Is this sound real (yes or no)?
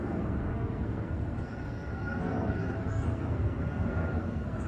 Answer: no